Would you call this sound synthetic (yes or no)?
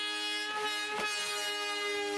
no